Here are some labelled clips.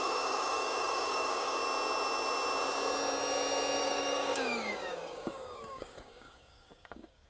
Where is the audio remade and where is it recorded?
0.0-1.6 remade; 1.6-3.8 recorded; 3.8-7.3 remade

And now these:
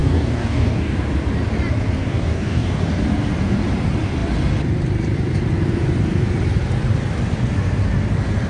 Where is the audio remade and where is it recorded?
0.0-1.1 remade; 1.1-2.0 recorded; 2.0-2.8 remade; 2.8-8.5 recorded

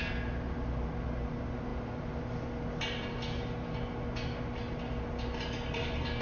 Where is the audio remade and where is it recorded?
0.0-6.2 recorded

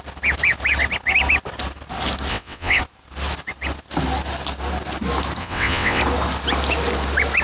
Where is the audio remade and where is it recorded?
0.0-2.3 recorded; 2.3-2.8 remade; 2.8-5.4 recorded; 5.4-6.0 remade; 6.0-7.4 recorded

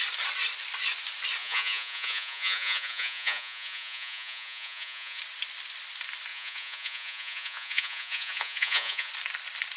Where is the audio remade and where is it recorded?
0.0-1.4 recorded; 1.4-5.2 remade; 5.2-6.3 recorded; 6.3-9.1 remade; 9.1-9.8 recorded

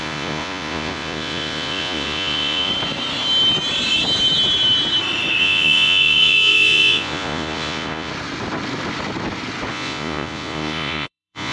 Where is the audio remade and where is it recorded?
0.0-2.7 remade; 2.7-5.4 recorded; 5.4-8.1 remade; 8.1-9.7 recorded; 9.7-11.5 remade